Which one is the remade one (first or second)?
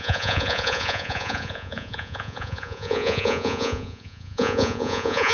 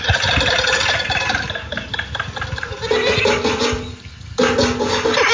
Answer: first